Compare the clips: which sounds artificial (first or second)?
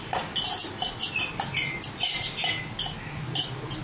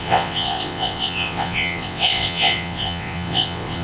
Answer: second